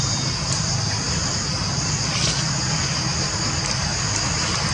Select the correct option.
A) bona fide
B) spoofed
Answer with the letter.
A